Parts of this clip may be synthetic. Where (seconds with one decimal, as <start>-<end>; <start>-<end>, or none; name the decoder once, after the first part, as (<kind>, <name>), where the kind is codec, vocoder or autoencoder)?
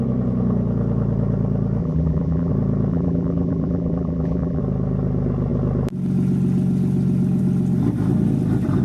1.8-2.5 (vocoder, BigVGAN v2); 2.9-4.6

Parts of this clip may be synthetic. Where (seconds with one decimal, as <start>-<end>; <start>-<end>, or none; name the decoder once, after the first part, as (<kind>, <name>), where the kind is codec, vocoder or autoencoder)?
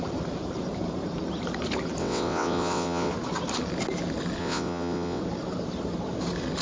2.0-3.1 (vocoder, WaveNeXt); 4.4-5.2